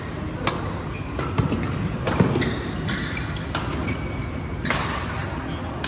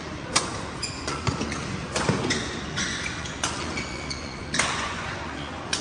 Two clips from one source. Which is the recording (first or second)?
first